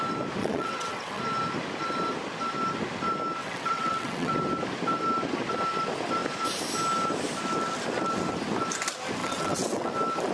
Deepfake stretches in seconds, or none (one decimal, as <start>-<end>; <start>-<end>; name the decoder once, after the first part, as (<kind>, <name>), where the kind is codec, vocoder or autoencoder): 0.4-1.2 (vocoder, WaveNeXt); 3.4-4.3; 9.2-9.9